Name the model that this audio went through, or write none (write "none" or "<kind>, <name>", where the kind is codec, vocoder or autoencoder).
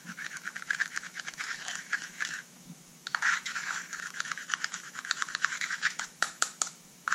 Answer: autoencoder, DAC-VAE